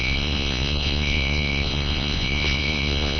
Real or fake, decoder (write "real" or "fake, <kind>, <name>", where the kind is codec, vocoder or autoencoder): fake, vocoder, Vocos